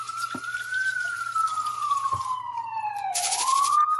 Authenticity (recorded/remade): remade